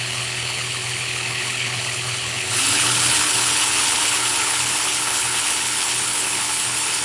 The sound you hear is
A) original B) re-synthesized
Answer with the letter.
B